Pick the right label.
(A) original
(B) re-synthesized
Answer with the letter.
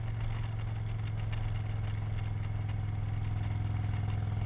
A